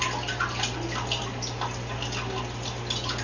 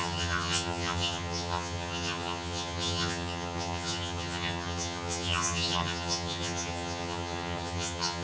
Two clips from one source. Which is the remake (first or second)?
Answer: second